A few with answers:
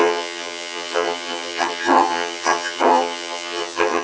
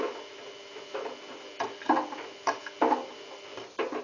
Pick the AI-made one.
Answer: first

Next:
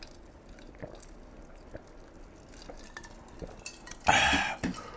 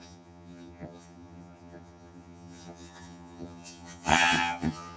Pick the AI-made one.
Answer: second